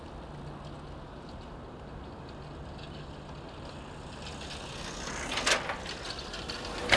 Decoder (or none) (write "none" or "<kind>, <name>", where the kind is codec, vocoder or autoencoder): none